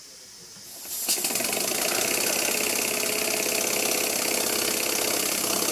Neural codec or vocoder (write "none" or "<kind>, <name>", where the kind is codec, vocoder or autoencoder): none